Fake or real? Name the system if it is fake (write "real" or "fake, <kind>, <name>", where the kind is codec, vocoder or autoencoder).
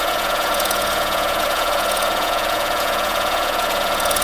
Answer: fake, vocoder, Vocos